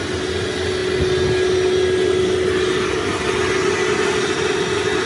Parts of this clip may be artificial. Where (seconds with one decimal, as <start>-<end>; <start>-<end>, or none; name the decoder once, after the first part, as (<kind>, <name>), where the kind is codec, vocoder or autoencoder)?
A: none